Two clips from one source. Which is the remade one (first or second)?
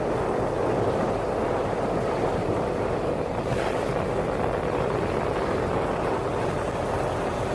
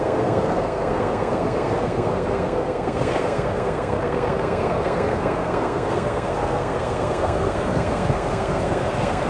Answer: second